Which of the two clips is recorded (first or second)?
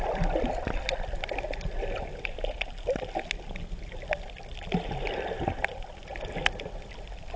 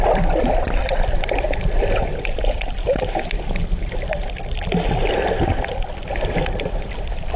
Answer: first